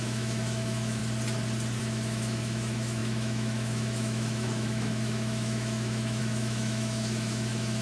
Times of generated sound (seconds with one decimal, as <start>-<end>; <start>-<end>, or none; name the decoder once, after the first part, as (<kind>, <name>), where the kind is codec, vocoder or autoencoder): 0.0-1.0 (autoencoder, DAC-VAE); 1.8-7.8